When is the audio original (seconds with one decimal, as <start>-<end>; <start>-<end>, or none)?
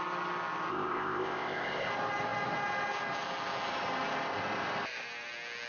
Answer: 0.0-0.7; 1.9-5.7